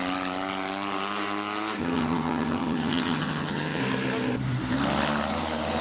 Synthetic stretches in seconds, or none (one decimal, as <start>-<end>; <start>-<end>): 1.8-3.8